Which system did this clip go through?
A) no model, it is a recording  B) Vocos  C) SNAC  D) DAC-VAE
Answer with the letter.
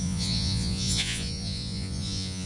B